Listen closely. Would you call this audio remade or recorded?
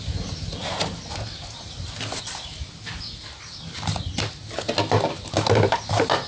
recorded